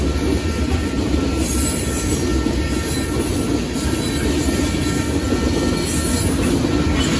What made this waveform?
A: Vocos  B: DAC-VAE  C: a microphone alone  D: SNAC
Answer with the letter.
C